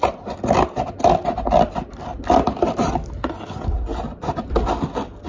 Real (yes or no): yes